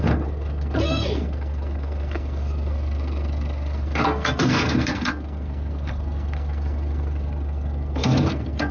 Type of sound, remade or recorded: remade